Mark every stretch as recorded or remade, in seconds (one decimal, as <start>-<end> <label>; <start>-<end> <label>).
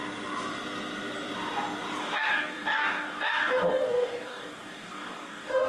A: 0.0-2.0 recorded; 2.0-5.7 remade